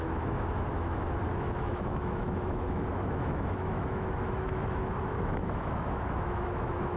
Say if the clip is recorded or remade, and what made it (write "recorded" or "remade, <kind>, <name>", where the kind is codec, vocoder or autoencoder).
remade, autoencoder, DAC-VAE